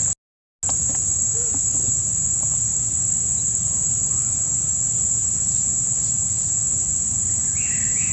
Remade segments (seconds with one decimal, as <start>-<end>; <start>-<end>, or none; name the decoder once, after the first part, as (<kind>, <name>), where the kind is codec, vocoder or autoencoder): none